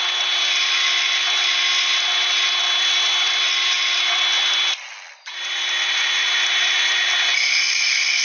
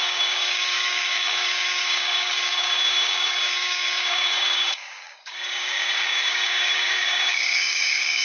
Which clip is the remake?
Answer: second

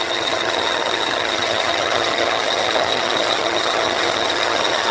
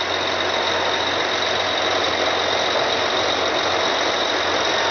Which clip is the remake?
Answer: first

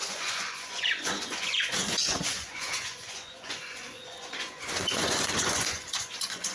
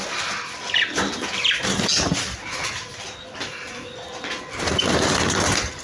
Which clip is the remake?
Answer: first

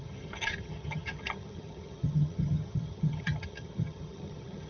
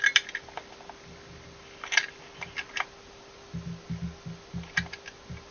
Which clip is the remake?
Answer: first